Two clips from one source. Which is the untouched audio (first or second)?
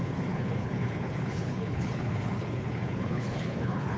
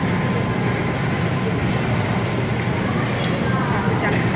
second